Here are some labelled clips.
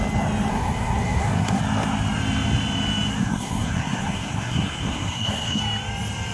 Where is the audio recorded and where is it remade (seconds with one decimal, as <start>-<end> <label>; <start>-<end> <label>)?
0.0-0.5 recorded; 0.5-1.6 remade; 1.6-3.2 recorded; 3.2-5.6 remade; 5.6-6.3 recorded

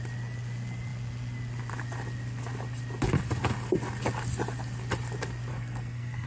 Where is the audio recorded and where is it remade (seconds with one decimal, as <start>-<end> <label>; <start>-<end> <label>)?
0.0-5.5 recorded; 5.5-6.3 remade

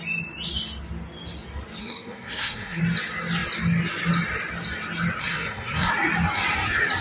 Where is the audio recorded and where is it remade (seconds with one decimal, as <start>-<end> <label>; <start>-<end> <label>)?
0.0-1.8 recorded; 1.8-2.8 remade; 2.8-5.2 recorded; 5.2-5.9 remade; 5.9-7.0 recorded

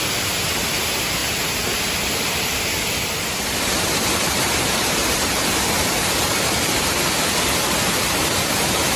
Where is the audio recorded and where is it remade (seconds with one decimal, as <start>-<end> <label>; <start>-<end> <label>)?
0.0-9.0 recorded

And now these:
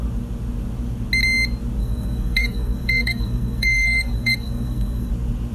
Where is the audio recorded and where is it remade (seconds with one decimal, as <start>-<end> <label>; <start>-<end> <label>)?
0.0-1.8 recorded; 1.8-5.1 remade; 5.1-5.5 recorded